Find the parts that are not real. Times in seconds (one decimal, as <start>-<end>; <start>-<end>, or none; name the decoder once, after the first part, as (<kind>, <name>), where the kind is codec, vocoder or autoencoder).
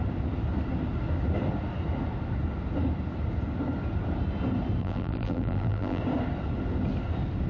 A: 4.8-6.0 (vocoder, BigVGAN v2)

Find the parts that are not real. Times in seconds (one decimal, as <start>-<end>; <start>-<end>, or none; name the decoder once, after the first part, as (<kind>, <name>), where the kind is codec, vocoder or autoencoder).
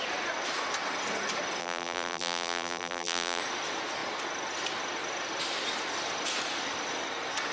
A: 1.6-3.4 (vocoder, BigVGAN v2)